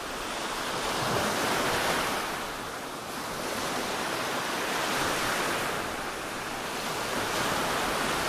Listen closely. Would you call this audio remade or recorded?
recorded